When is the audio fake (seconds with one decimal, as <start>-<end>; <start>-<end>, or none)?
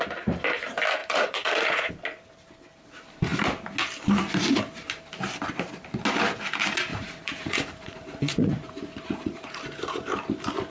1.0-1.9; 6.9-9.6